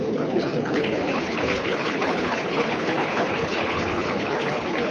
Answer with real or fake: fake